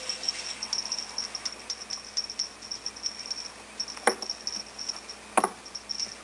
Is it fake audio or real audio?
real